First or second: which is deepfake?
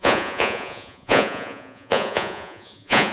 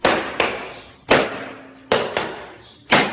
first